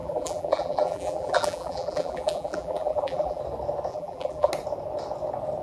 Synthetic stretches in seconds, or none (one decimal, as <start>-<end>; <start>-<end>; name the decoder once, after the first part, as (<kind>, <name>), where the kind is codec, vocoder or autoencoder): 0.0-3.4 (vocoder, BigVGAN v2); 3.9-4.5